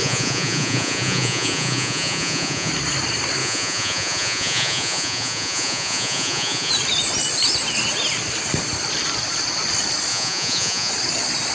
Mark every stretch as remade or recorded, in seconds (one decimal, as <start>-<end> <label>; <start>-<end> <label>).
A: 0.0-2.7 remade; 2.7-3.4 recorded; 3.4-6.7 remade; 6.7-10.1 recorded; 10.1-10.9 remade; 10.9-11.5 recorded